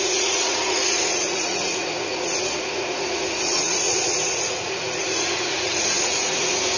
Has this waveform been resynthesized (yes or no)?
yes